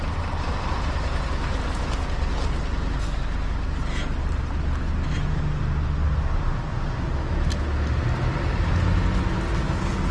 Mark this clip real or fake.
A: real